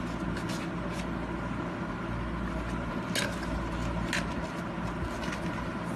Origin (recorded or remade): recorded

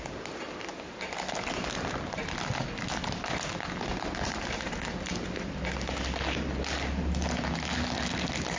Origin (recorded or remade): recorded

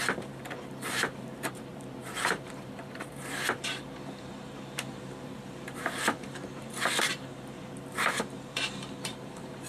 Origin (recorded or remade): remade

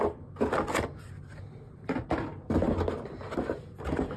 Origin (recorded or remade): recorded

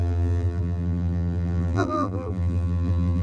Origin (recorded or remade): remade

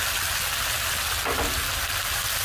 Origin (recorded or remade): recorded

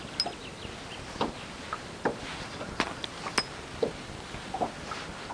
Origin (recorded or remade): recorded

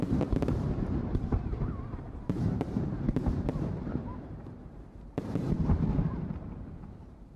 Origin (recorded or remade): remade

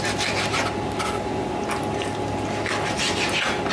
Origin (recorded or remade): recorded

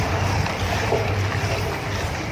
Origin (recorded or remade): remade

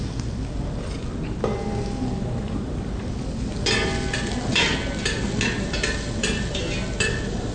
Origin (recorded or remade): recorded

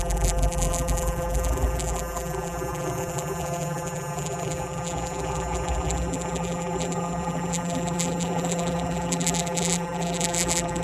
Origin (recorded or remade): remade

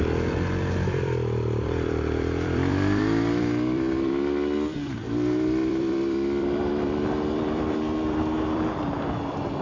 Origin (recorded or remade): remade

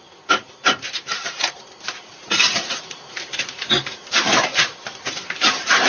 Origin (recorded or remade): remade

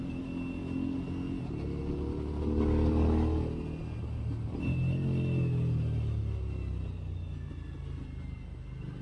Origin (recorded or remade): recorded